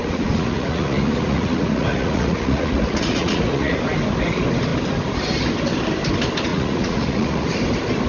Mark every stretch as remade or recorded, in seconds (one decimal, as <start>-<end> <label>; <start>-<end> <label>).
0.0-3.8 remade; 3.8-6.5 recorded; 6.5-7.5 remade; 7.5-8.1 recorded